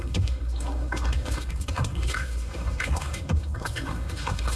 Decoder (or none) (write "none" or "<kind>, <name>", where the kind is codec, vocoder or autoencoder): codec, SNAC